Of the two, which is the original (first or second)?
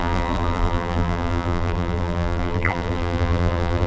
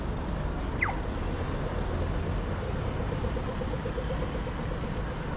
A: second